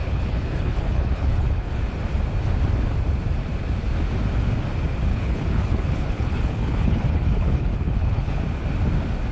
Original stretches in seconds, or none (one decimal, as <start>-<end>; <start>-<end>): 1.8-5.1; 8.4-9.3

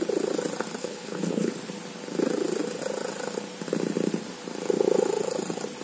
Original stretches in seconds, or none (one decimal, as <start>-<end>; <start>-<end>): 0.0-0.8; 1.5-5.8

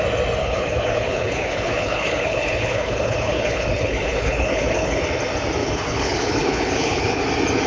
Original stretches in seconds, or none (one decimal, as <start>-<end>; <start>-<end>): 0.0-0.4; 5.0-5.6; 7.2-7.7

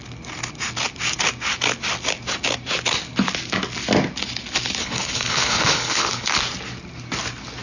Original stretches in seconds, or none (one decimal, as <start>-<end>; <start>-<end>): 0.0-4.8; 6.3-7.6

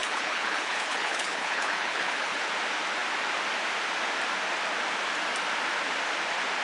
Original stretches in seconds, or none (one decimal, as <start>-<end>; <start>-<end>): 2.4-6.6

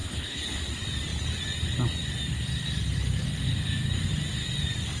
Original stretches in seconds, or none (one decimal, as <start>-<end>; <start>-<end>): 0.6-5.0

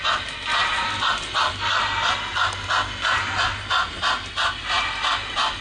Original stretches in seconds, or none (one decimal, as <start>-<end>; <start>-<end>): 0.0-5.6